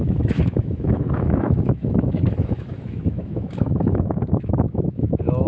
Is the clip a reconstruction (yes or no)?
yes